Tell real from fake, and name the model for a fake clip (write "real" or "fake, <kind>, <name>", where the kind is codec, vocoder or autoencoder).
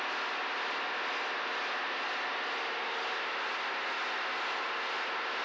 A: real